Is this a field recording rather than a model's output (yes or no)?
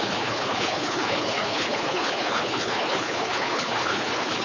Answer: no